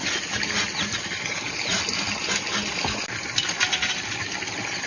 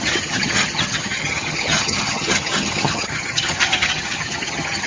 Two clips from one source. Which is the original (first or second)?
first